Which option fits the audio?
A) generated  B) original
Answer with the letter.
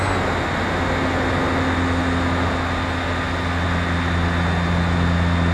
B